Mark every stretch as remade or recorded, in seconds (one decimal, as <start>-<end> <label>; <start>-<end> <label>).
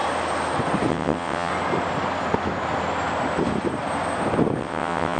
0.0-0.9 recorded; 0.9-1.5 remade; 1.5-4.6 recorded; 4.6-5.2 remade